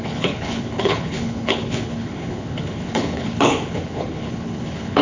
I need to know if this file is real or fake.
fake